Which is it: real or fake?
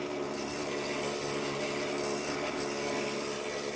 real